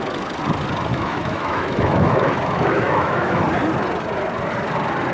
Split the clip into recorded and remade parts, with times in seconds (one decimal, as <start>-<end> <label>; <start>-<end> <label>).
0.0-0.9 recorded; 0.9-3.4 remade; 3.4-5.1 recorded